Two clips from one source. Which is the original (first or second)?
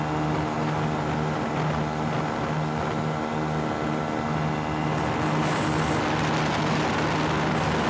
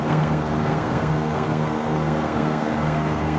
first